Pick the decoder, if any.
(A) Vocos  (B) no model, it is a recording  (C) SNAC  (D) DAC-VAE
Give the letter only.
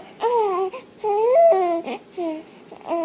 B